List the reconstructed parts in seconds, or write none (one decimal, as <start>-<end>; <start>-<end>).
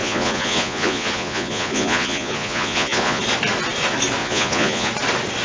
0.0-3.2; 4.2-4.9